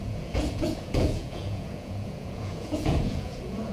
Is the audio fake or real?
fake